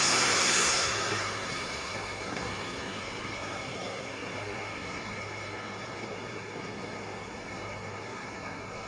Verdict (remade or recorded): remade